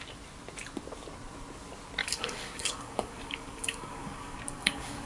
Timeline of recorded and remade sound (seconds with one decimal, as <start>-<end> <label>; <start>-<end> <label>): 0.0-2.0 recorded; 2.0-5.1 remade